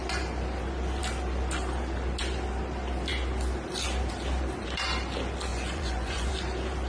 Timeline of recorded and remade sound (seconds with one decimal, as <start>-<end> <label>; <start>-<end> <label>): 0.0-5.5 recorded; 5.5-6.3 remade; 6.3-6.9 recorded